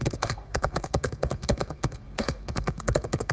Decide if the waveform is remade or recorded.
remade